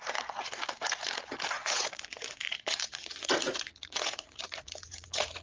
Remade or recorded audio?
remade